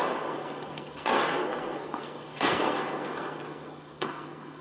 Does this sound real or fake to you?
fake